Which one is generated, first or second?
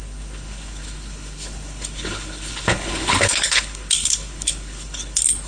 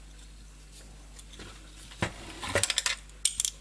first